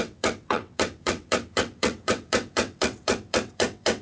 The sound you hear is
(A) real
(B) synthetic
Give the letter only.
B